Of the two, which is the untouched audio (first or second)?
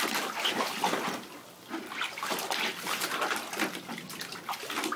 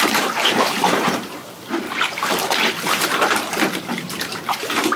first